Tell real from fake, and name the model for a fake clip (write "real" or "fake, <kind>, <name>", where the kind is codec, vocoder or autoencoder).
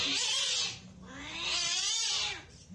real